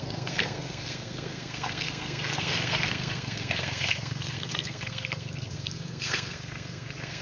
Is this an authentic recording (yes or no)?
no